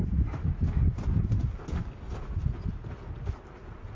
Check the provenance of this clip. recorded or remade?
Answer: recorded